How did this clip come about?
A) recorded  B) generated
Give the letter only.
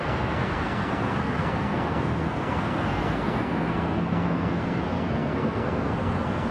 B